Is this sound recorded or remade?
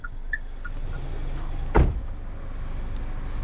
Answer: recorded